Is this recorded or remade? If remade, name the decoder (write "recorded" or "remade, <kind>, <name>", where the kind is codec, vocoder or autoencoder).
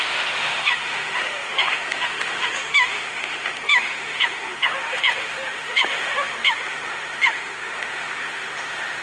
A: remade, autoencoder, DAC-VAE